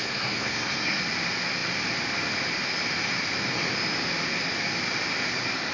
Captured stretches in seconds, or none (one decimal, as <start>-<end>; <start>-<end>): 1.0-5.7